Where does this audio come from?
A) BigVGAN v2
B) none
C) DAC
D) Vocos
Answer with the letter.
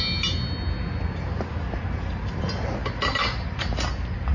B